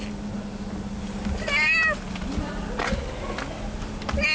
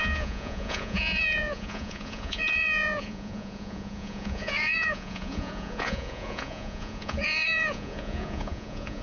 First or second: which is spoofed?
second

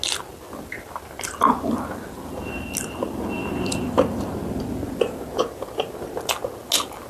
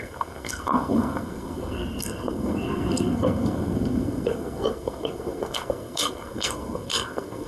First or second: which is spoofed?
second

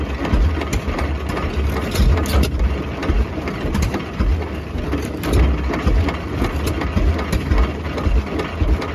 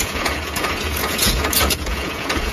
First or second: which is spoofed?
second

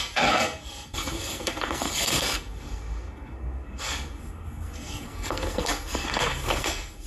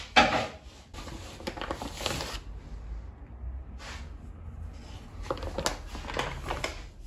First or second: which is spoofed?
first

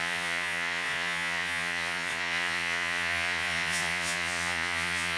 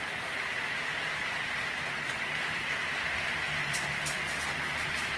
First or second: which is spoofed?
first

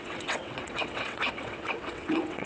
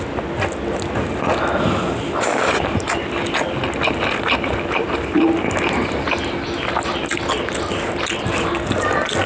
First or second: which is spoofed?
first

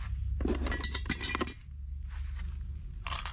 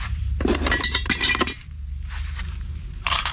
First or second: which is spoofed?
second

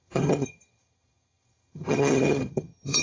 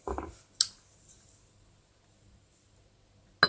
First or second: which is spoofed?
first